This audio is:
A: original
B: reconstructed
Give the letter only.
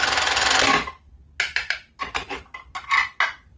A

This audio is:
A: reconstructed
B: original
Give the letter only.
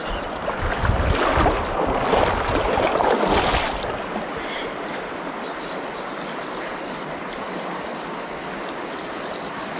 B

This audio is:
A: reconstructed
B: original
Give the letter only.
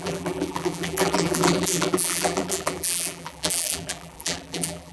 A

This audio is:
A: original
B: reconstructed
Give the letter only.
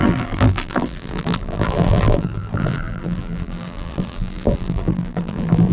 B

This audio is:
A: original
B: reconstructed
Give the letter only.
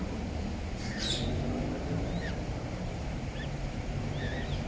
B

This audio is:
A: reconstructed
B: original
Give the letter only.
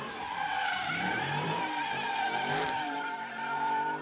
A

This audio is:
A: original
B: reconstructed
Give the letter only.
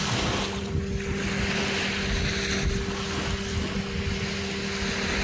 A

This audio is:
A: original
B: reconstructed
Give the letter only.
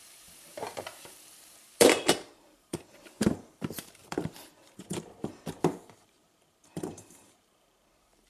B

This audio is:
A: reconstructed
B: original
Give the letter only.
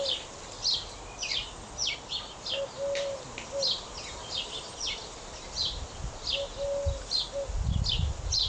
B